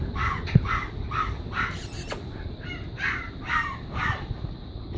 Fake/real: real